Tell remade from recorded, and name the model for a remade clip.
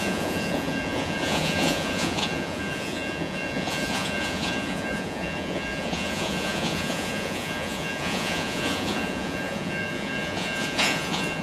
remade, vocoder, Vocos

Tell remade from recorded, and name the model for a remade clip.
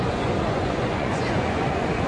remade, vocoder, Vocos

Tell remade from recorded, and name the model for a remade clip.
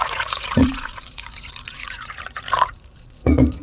remade, vocoder, Vocos